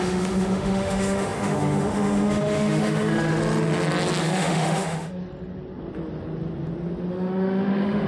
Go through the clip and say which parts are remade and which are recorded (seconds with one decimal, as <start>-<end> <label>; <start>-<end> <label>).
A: 0.0-3.4 remade; 3.4-4.2 recorded; 4.2-5.2 remade; 5.2-7.1 recorded; 7.1-8.1 remade